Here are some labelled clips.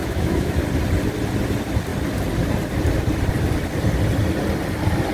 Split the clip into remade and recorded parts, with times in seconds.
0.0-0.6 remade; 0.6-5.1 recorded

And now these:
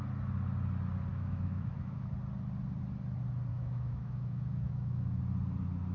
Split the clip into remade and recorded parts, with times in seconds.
0.0-1.1 recorded; 1.1-2.1 remade; 2.1-3.5 recorded; 3.5-5.2 remade; 5.2-5.9 recorded